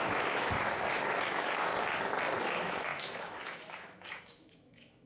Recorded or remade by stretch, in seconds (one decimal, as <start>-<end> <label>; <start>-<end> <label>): 0.0-1.7 remade; 1.7-2.4 recorded; 2.4-5.1 remade

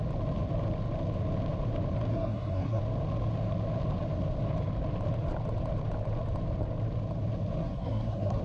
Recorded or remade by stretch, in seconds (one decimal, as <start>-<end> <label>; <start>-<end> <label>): 0.0-2.1 recorded; 2.1-2.8 remade; 2.8-7.6 recorded; 7.6-8.4 remade